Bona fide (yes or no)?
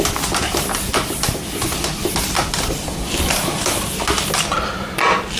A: yes